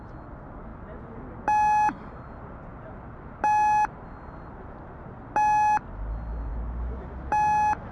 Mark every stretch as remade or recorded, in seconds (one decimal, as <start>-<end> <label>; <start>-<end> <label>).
0.0-7.9 recorded